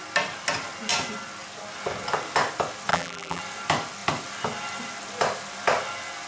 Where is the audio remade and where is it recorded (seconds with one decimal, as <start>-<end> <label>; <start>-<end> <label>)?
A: 0.0-2.9 recorded; 2.9-3.4 remade; 3.4-6.3 recorded